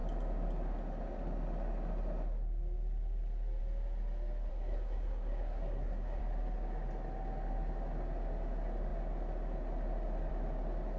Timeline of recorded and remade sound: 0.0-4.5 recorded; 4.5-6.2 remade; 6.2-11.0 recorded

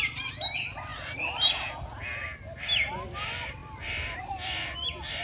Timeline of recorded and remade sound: 0.0-5.2 recorded

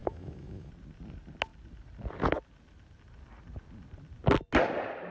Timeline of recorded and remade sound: 0.0-0.7 remade; 0.7-5.1 recorded

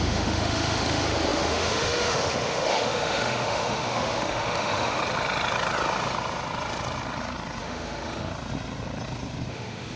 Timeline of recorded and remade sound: 0.0-5.0 remade; 5.0-7.6 recorded; 7.6-8.3 remade; 8.3-9.5 recorded; 9.5-10.0 remade

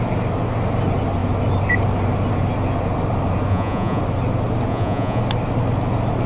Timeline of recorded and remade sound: 0.0-3.5 recorded; 3.5-4.0 remade; 4.0-4.7 recorded; 4.7-5.2 remade; 5.2-6.3 recorded

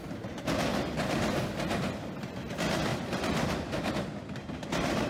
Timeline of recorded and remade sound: 0.0-0.7 recorded; 0.7-1.5 remade; 1.5-2.9 recorded; 2.9-3.9 remade; 3.9-5.1 recorded

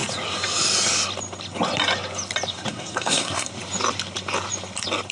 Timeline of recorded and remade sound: 0.0-2.7 recorded; 2.7-3.5 remade; 3.5-5.1 recorded